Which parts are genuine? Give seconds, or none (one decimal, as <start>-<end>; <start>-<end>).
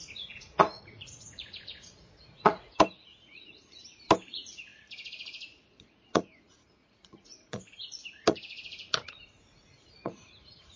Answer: 3.8-4.3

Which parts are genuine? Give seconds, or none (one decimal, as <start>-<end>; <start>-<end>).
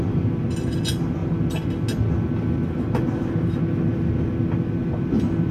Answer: 0.0-5.5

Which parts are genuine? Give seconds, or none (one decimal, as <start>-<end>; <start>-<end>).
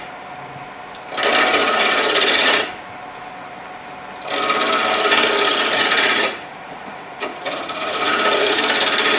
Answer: 0.0-1.6; 2.7-5.5; 8.6-9.2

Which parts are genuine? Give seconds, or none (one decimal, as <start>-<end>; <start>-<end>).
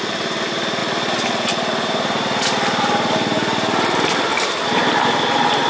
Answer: 0.0-5.7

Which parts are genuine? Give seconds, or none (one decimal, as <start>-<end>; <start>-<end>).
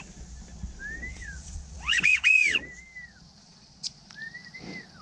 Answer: 0.0-1.1; 2.6-3.4; 4.1-5.0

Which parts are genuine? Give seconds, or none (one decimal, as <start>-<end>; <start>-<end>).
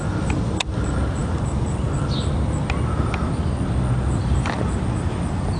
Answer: 0.0-5.6